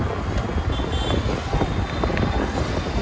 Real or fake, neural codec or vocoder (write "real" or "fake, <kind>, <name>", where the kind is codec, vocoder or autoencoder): real